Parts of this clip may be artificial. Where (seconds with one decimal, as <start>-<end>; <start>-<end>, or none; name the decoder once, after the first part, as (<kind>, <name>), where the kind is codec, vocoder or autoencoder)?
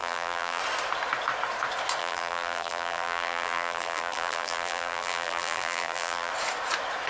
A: 0.0-0.6 (vocoder, BigVGAN v2); 2.0-6.3